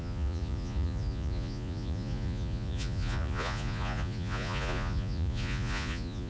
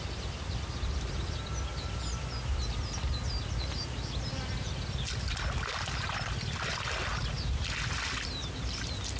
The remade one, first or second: first